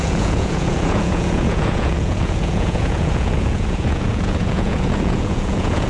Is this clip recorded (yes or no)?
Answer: no